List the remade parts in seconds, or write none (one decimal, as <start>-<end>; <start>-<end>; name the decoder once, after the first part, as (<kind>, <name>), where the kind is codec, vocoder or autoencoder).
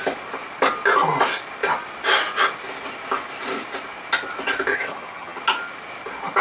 4.7-5.4 (vocoder, HiFi-GAN)